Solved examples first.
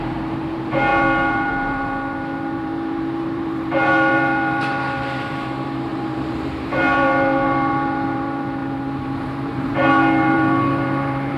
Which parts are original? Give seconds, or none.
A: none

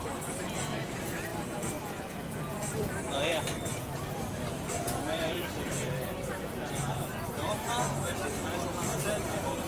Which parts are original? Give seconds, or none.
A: 1.3-2.0; 8.4-9.0

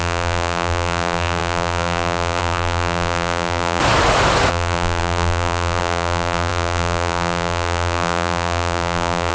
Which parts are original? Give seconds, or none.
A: 3.8-4.5

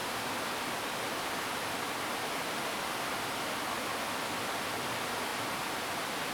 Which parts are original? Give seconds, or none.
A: 0.0-6.3